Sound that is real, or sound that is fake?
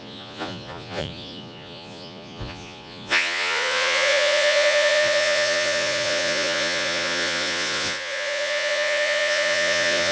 fake